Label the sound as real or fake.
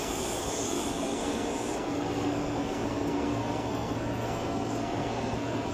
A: fake